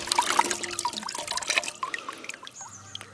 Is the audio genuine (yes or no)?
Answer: yes